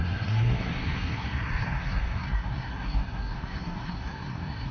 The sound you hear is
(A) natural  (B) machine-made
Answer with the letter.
B